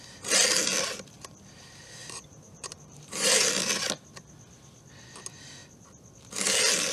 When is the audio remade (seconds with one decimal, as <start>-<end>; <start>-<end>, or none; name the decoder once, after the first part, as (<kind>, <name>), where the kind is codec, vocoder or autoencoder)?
2.0-3.4 (vocoder, BigVGAN v2)